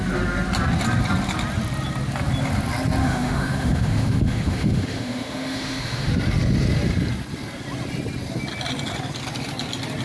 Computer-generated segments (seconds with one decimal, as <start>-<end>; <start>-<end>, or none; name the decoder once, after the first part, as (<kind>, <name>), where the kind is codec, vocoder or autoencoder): 3.0-6.1 (autoencoder, DAC-VAE)